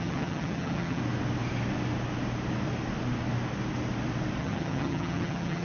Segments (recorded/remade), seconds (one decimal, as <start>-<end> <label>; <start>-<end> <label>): 0.0-1.0 remade; 1.0-4.4 recorded; 4.4-5.6 remade